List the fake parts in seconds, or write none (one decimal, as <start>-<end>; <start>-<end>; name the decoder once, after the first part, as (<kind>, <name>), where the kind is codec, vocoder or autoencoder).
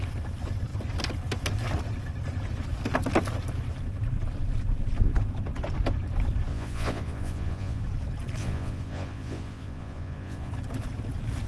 6.5-7.8 (vocoder, Vocos); 8.4-10.5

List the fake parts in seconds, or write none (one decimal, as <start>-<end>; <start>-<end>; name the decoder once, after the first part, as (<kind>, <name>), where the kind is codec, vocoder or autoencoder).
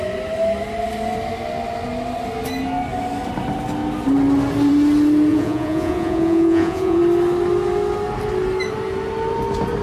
5.3-7.0 (vocoder, Vocos)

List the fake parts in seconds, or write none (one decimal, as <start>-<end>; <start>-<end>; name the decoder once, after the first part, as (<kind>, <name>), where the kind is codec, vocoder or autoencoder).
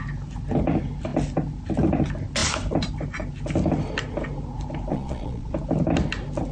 4.9-5.5 (vocoder, Vocos)